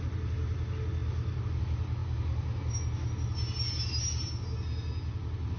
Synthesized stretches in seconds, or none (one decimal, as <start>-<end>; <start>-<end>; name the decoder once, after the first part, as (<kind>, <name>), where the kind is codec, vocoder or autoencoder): none